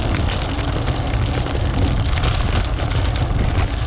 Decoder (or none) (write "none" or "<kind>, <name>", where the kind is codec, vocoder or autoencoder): none